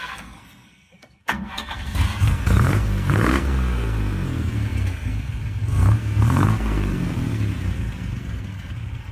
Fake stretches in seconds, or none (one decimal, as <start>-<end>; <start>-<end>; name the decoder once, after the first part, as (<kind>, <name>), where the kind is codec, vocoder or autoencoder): 0.0-9.1 (codec, SNAC)